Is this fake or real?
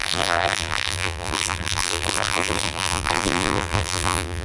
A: fake